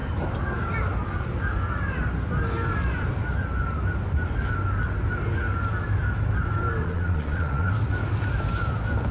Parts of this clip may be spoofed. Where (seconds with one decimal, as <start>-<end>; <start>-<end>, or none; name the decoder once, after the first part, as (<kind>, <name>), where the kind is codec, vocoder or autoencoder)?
6.8-7.7 (vocoder, Vocos)